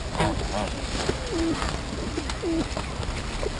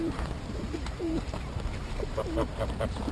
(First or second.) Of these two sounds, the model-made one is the second